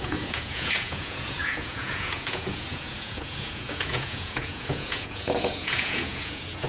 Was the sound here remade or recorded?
remade